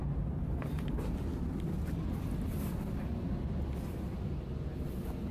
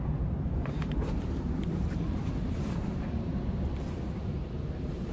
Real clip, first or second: first